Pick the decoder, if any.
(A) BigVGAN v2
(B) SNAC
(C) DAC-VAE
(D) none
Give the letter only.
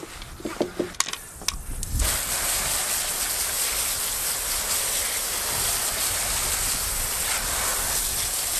D